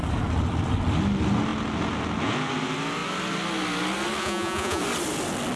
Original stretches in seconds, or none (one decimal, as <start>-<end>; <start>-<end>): 0.0-4.2; 4.8-5.6